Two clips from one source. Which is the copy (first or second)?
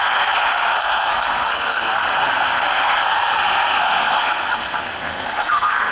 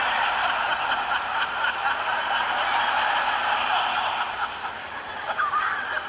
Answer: first